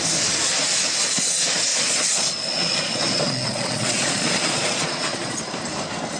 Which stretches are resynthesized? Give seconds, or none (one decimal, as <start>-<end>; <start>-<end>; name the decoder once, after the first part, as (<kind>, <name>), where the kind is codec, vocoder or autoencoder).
1.7-5.4 (vocoder, Vocos)